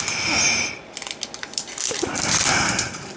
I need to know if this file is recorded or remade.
recorded